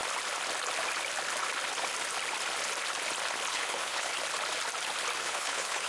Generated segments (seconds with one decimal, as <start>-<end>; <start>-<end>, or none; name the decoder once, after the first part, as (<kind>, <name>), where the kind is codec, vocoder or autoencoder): 3.5-4.1 (codec, HILCodec); 5.2-5.9